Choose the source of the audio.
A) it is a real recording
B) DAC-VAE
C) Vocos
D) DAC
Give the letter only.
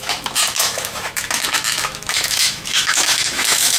B